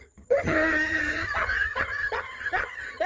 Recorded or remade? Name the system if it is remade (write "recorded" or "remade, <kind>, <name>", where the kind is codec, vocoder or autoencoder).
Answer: remade, vocoder, HiFi-GAN